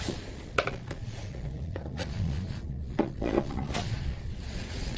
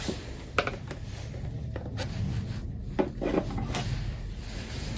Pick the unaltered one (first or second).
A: second